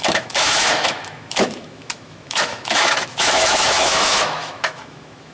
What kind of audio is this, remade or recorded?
remade